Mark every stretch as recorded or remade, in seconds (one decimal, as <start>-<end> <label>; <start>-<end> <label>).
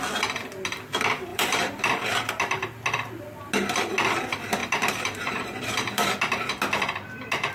0.0-1.3 recorded; 1.3-2.3 remade; 2.3-4.6 recorded; 4.6-6.5 remade; 6.5-7.5 recorded